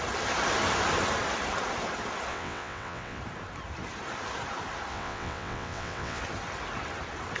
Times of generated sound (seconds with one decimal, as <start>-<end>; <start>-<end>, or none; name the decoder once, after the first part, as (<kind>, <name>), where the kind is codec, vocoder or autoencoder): 2.3-3.2 (vocoder, WaveNeXt); 4.9-6.2